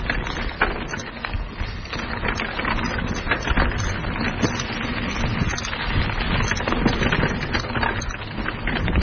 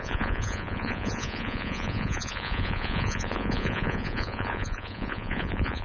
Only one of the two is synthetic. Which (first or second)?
second